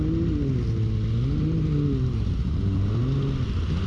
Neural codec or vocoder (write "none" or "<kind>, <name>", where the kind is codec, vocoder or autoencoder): none